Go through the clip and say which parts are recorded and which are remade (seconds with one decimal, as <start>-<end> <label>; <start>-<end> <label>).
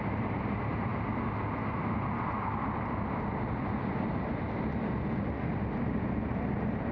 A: 0.0-6.9 recorded